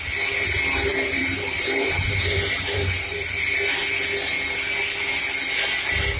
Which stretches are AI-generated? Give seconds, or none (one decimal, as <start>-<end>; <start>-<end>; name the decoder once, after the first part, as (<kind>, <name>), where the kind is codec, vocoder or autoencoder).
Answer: 0.9-3.3 (vocoder, BigVGAN v2)